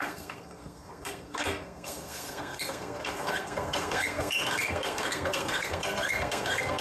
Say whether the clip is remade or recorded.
remade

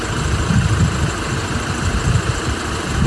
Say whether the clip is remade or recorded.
recorded